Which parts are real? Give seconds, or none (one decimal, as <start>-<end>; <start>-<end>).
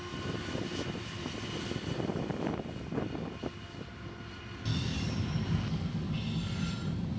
0.0-4.7; 6.1-7.2